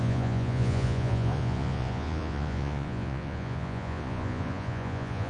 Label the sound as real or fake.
fake